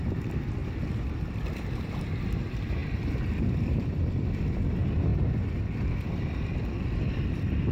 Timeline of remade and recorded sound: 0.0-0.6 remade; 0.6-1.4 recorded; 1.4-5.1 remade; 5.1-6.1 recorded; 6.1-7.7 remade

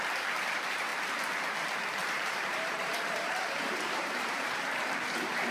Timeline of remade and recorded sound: 0.0-2.0 recorded; 2.0-5.5 remade

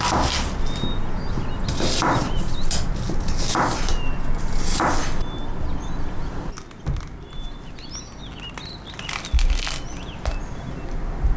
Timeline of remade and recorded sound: 0.0-11.4 recorded

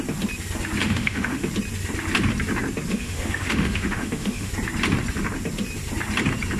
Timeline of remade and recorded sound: 0.0-0.8 recorded; 0.8-1.5 remade; 1.5-2.9 recorded; 2.9-4.5 remade; 4.5-6.6 recorded

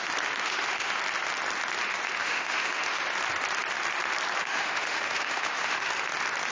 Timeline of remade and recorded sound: 0.0-0.4 recorded; 0.4-0.9 remade; 0.9-2.2 recorded; 2.2-3.0 remade; 3.0-4.4 recorded; 4.4-5.9 remade; 5.9-6.5 recorded

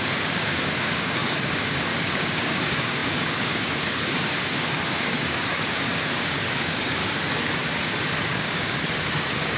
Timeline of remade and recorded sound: 0.0-7.0 remade; 7.0-8.3 recorded; 8.3-9.6 remade